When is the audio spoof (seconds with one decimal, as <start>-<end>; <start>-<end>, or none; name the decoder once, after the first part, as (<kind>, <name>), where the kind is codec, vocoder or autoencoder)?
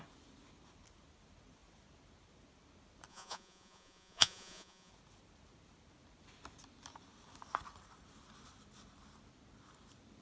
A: 3.1-4.9 (vocoder, Vocos)